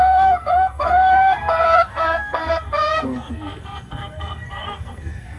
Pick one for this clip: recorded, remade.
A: remade